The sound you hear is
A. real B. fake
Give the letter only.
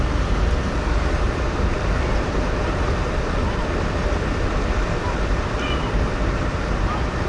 B